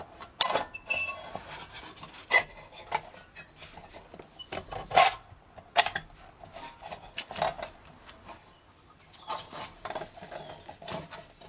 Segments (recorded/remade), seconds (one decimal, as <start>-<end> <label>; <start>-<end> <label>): 0.0-11.5 recorded